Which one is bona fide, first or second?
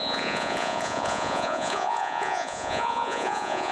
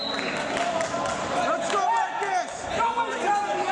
second